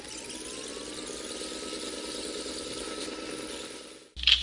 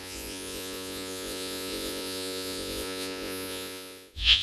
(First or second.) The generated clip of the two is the second